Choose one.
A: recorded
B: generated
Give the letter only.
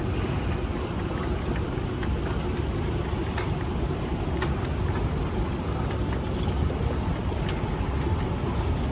A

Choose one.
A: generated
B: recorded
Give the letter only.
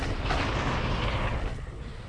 B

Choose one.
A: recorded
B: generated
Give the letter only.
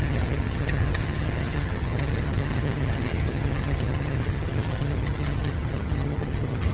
B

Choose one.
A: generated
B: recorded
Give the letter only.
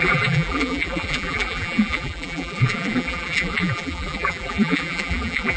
A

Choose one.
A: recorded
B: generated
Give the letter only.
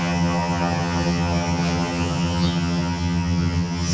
B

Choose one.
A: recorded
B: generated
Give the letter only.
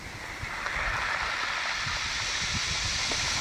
A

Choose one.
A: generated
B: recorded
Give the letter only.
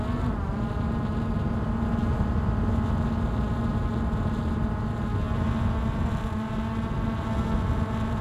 B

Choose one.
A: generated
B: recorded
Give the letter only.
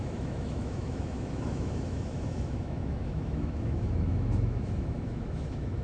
A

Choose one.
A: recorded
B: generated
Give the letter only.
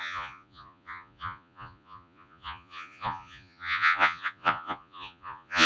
B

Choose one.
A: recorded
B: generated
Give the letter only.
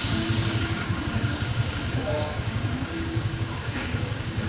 B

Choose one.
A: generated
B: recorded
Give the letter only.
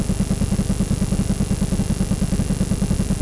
B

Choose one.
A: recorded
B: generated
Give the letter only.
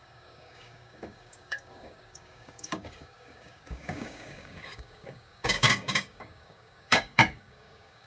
B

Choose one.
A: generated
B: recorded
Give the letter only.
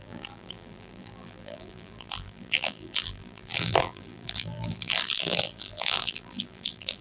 A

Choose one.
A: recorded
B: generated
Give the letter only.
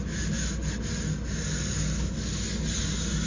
A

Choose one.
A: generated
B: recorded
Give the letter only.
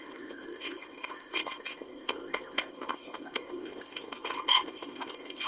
A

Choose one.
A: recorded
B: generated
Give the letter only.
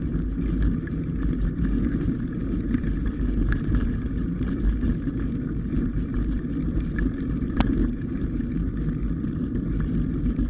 B